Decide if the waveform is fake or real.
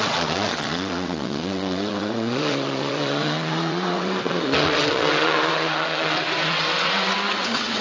fake